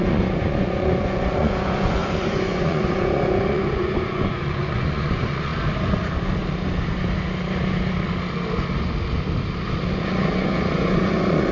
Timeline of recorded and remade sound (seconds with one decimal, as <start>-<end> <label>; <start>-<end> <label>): 0.0-5.5 remade; 5.5-9.9 recorded; 9.9-11.5 remade